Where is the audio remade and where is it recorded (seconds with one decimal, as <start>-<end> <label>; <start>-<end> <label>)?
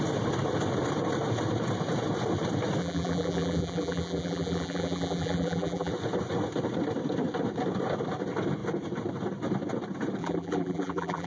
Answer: 0.0-2.8 recorded; 2.8-5.9 remade; 5.9-10.2 recorded; 10.2-11.3 remade